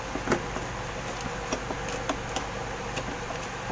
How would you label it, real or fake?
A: real